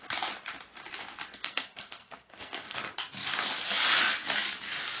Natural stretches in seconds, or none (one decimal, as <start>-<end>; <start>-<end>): 0.0-1.3; 2.9-5.0